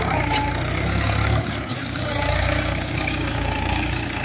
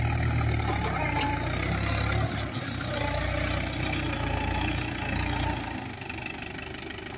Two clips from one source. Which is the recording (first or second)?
second